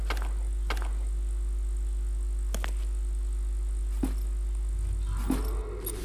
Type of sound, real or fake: real